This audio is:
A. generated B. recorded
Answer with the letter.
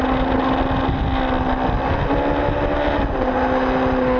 B